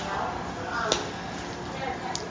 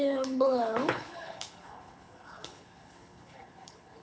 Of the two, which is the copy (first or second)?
second